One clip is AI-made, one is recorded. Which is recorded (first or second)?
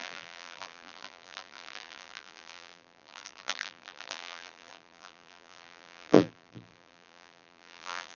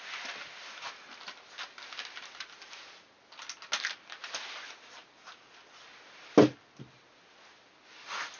second